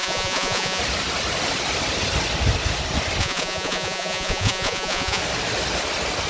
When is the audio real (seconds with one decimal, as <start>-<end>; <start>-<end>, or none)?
0.8-3.2; 5.2-6.3